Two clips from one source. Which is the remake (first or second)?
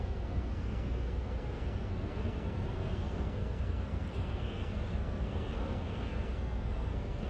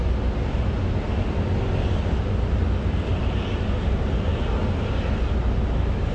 first